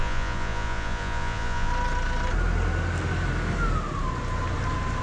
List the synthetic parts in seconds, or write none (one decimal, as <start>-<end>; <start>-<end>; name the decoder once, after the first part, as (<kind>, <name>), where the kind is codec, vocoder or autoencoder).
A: 0.0-1.7 (vocoder, Vocos)